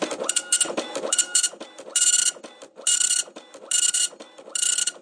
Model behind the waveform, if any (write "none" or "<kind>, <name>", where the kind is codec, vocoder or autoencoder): none